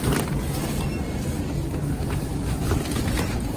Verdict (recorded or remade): recorded